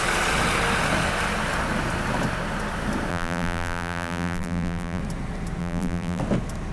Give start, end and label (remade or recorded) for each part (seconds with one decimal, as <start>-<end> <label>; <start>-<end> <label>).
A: 0.0-3.1 recorded; 3.1-5.0 remade; 5.0-5.6 recorded; 5.6-6.2 remade; 6.2-6.7 recorded